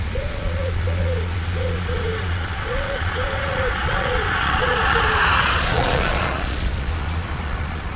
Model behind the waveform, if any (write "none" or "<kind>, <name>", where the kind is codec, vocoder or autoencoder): vocoder, Vocos